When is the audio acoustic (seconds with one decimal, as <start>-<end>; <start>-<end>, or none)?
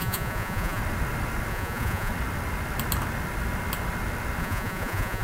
0.8-1.5; 2.1-4.4